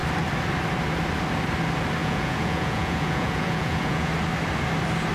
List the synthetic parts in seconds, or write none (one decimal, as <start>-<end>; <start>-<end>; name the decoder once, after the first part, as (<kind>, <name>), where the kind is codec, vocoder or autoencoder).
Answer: 2.0-4.1 (vocoder, Vocos)

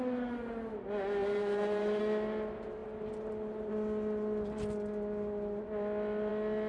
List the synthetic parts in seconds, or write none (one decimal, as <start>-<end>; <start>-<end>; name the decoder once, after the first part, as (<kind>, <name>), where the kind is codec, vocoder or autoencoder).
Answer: 1.2-2.0 (vocoder, BigVGAN v2)

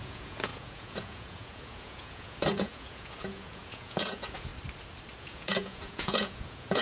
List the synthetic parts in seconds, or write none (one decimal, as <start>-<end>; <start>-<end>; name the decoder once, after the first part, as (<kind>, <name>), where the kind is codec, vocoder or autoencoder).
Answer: 0.0-4.5 (vocoder, Vocos); 5.2-6.8

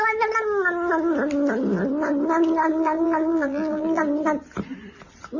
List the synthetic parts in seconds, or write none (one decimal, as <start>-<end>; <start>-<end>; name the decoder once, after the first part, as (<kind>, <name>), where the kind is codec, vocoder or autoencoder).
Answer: 2.7-4.0 (vocoder, BigVGAN v2)

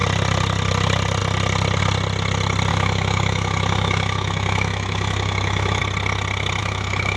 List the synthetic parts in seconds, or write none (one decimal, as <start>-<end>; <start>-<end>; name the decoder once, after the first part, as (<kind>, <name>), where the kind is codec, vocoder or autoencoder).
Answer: 2.7-5.8 (autoencoder, DAC-VAE); 6.6-7.2